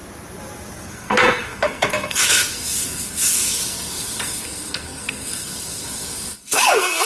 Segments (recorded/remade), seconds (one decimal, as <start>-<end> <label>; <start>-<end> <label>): 0.0-0.9 recorded; 0.9-7.1 remade